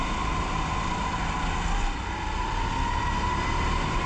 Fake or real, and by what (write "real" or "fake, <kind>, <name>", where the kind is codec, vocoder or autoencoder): real